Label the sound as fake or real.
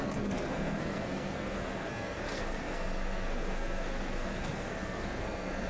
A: fake